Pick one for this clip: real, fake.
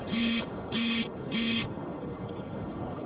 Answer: fake